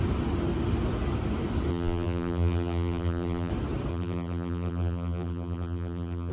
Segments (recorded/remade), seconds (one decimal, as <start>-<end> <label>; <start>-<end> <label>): 0.0-1.7 recorded; 1.7-3.5 remade; 3.5-3.9 recorded; 3.9-6.3 remade